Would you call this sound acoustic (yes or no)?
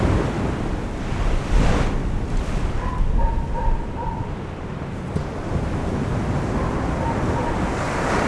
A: yes